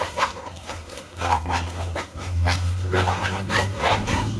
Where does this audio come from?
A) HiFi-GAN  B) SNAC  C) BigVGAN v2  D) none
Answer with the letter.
B